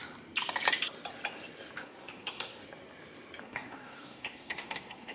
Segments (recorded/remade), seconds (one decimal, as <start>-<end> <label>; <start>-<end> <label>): 0.0-1.8 recorded; 1.8-2.6 remade; 2.6-3.4 recorded; 3.4-5.1 remade